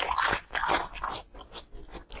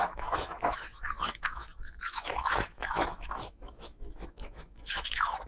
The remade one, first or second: second